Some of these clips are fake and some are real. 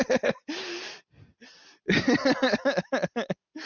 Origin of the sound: real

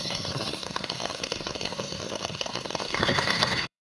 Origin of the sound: fake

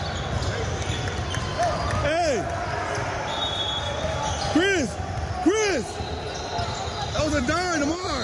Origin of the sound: real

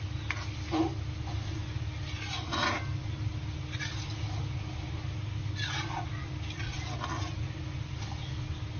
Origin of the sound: real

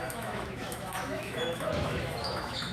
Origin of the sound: fake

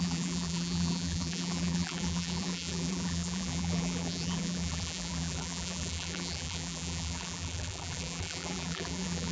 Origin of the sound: fake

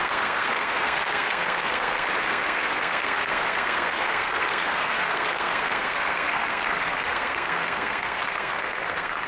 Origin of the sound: fake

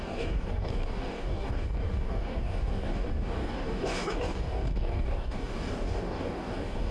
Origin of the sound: fake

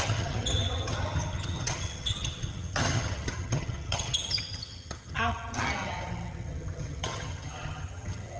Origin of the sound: fake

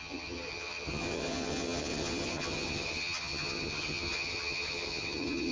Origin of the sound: fake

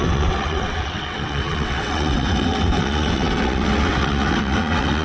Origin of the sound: fake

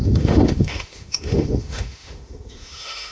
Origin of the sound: fake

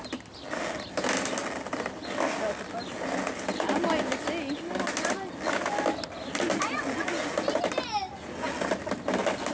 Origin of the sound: real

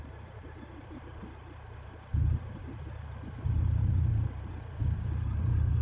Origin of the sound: fake